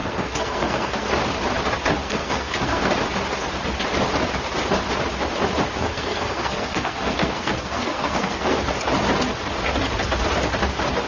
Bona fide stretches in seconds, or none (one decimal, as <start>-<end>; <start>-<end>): 1.1-2.0; 2.9-5.8; 8.6-11.1